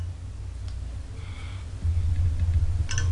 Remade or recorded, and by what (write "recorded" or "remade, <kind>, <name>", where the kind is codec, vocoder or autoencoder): recorded